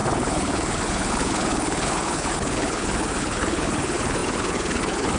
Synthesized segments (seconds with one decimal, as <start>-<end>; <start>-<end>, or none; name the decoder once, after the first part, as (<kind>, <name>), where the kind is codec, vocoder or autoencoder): 0.0-5.2 (codec, HILCodec)